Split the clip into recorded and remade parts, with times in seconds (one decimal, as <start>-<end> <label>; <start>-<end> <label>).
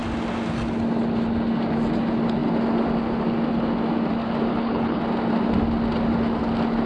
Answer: 0.0-4.5 recorded; 4.5-5.0 remade; 5.0-6.9 recorded